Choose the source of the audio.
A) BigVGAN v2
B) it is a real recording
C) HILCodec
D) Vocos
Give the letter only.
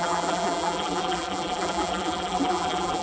A